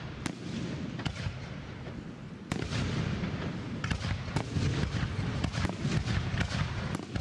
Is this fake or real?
real